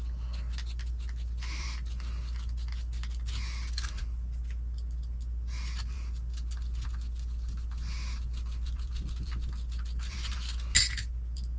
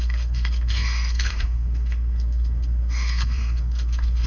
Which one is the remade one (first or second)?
second